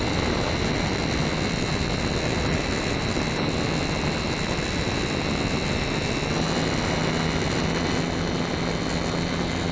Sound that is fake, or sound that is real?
real